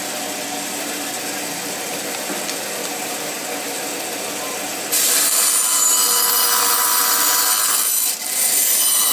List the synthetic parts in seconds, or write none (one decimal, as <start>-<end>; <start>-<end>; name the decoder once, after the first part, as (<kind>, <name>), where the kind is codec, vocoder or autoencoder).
none